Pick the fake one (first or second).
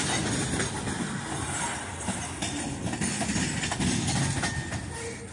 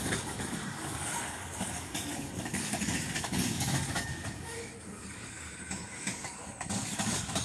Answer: second